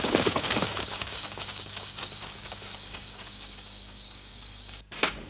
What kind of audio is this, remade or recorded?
remade